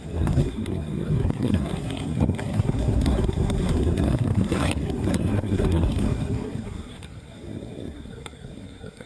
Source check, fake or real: fake